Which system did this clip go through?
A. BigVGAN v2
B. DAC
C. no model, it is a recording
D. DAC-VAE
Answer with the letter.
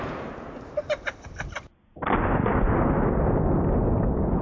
C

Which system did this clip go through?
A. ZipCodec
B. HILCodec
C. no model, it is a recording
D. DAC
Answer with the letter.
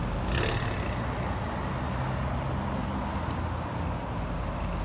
C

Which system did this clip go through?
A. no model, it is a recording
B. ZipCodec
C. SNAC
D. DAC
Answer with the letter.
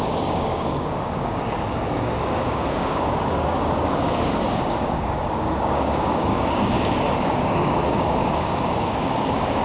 D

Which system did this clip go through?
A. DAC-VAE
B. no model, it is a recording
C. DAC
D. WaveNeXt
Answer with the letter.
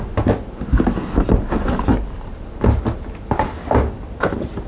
B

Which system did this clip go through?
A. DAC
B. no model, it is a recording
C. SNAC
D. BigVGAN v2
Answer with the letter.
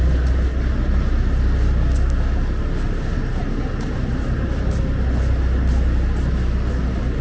B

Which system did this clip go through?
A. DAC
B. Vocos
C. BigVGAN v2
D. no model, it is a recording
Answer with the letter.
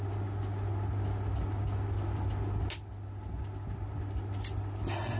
D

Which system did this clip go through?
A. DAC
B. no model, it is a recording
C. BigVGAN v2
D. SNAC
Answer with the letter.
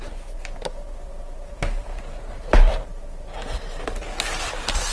B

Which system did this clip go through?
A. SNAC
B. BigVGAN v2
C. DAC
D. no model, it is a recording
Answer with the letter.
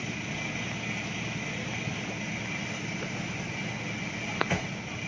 D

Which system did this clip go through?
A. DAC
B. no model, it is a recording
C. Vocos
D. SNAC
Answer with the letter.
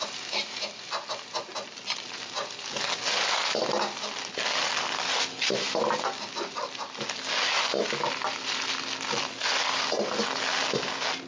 B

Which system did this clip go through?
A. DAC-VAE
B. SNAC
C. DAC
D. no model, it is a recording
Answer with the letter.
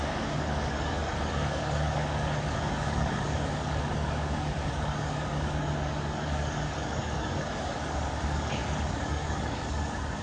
C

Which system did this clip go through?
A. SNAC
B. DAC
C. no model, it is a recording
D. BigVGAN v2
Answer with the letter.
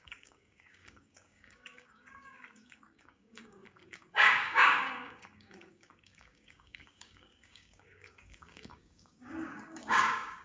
B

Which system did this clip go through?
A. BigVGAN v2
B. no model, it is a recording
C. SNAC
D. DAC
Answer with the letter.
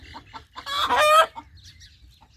B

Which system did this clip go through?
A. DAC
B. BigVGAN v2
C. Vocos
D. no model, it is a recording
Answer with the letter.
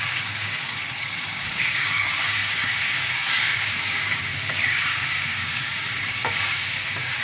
A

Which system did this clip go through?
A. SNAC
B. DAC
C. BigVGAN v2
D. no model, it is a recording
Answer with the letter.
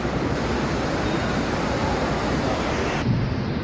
D